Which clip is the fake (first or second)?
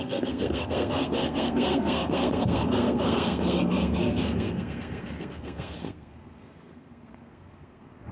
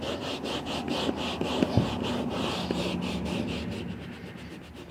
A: first